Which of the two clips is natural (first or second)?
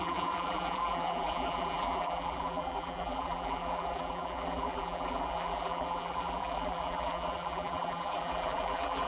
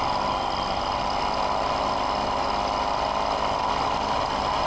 second